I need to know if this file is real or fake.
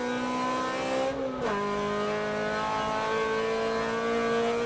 real